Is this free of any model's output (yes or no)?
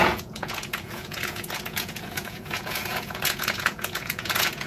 no